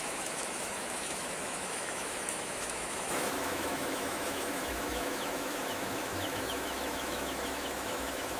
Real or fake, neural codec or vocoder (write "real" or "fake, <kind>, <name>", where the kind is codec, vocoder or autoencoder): fake, autoencoder, DAC-VAE